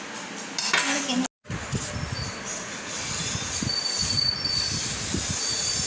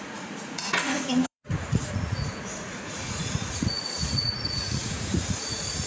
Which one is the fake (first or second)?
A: second